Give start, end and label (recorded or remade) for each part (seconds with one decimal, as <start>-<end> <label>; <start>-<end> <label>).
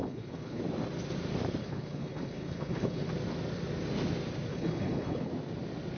0.0-0.6 remade; 0.6-1.6 recorded; 1.6-3.1 remade; 3.1-4.5 recorded; 4.5-5.3 remade; 5.3-6.0 recorded